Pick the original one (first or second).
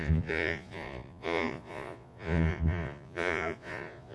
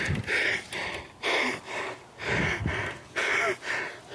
second